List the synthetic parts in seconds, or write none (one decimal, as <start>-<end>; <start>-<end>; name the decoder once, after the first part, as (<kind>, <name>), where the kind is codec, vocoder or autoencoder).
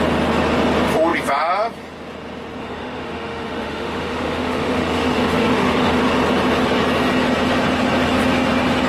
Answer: 2.6-6.0 (autoencoder, DAC-VAE)